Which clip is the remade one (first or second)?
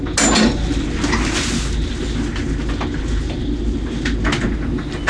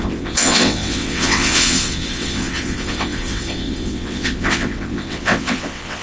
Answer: second